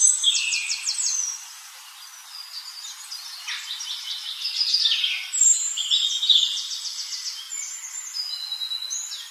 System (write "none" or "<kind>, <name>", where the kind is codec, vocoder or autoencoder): none